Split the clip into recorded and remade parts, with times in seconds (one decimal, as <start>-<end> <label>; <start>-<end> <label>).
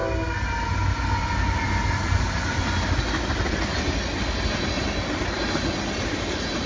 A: 0.0-6.7 recorded